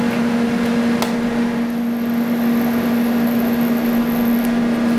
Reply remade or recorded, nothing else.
recorded